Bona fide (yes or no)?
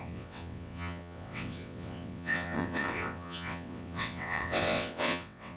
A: no